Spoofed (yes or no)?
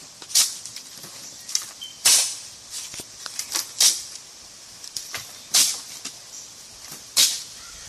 yes